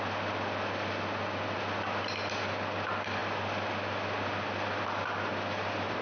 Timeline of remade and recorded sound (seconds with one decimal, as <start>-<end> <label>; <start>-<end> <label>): 0.0-6.0 recorded